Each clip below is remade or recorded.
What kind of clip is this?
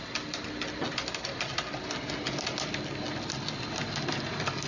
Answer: recorded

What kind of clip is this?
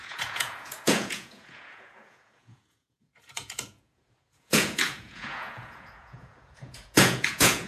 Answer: remade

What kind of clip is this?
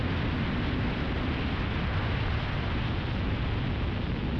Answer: recorded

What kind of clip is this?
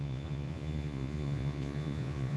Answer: remade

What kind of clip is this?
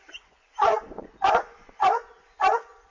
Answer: remade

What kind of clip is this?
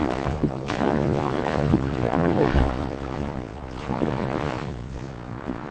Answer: remade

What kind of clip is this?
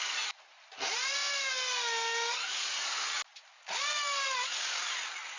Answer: recorded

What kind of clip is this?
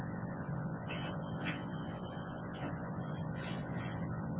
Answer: remade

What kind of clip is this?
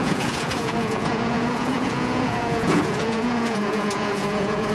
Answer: remade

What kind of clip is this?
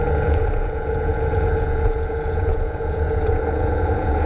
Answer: remade